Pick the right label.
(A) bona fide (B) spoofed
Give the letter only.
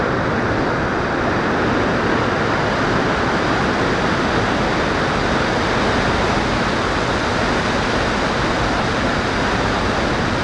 A